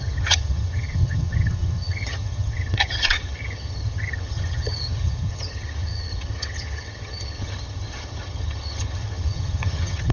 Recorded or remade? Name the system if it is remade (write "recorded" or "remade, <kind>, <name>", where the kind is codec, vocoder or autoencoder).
remade, vocoder, HiFi-GAN